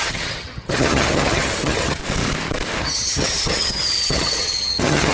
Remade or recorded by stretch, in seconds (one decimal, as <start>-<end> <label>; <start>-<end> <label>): 0.0-2.0 remade; 2.0-2.8 recorded; 2.8-5.1 remade